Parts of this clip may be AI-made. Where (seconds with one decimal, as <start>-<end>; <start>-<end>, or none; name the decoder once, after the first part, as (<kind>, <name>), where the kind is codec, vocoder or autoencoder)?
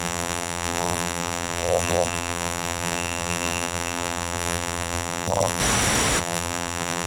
0.0-5.6 (vocoder, BigVGAN v2); 6.2-7.1